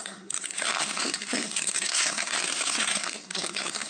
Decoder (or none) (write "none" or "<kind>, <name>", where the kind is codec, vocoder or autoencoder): codec, SNAC